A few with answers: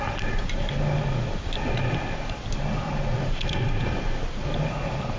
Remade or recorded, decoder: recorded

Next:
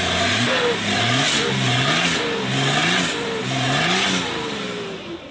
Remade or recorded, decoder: recorded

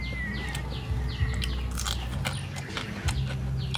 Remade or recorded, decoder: recorded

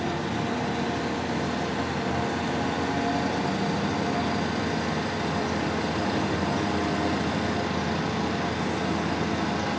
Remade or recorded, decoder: recorded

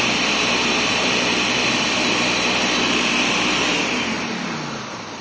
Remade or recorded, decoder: recorded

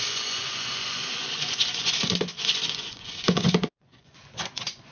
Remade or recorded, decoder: remade, vocoder, Vocos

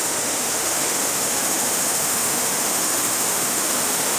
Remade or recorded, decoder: remade, autoencoder, DAC-VAE